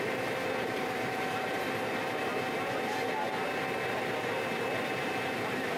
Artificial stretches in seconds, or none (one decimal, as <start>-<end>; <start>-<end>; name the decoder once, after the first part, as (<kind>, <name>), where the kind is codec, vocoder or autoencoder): none